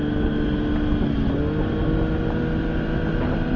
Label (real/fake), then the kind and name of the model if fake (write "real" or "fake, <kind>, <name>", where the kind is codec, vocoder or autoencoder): real